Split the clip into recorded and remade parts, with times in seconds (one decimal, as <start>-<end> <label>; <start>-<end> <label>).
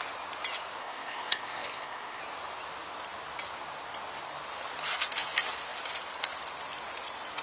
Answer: 0.0-0.8 recorded; 0.8-2.2 remade; 2.2-7.4 recorded